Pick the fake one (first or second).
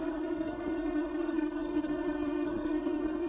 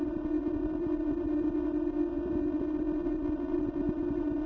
first